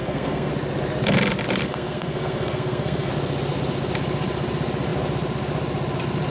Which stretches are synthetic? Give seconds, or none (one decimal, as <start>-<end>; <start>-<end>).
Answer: 0.0-0.5; 1.6-3.1

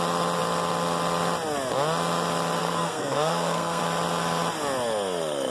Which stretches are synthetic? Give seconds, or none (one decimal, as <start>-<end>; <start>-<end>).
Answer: 2.6-3.8

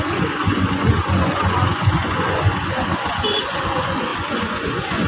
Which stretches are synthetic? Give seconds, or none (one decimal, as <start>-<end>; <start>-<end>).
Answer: 0.0-5.1